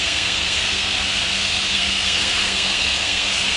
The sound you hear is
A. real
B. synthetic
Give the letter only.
B